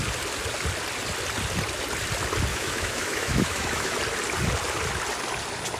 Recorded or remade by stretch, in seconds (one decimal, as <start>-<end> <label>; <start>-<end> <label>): 0.0-2.5 recorded; 2.5-3.9 remade; 3.9-5.8 recorded